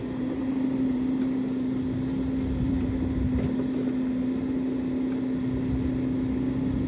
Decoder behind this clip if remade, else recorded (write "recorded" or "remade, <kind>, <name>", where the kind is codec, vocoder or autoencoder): recorded